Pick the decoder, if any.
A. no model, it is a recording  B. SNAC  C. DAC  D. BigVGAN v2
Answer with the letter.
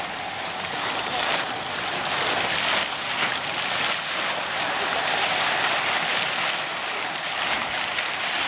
A